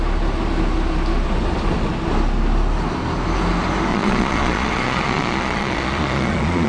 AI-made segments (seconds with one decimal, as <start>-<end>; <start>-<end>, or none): 3.9-6.7